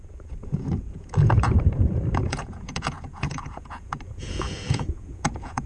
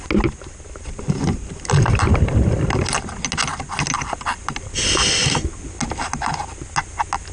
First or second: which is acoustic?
second